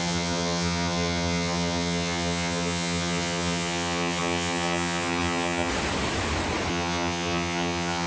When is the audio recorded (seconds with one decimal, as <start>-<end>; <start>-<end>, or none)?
5.7-6.7